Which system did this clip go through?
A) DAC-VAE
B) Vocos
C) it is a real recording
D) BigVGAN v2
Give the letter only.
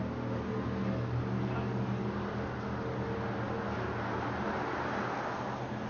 C